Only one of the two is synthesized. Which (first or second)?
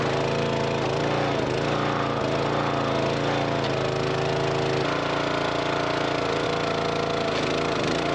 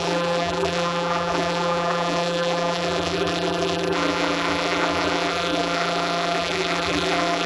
second